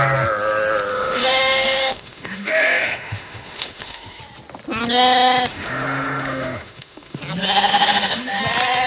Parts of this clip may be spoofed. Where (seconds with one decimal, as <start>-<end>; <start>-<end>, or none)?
0.9-4.2; 5.5-7.2; 7.7-8.4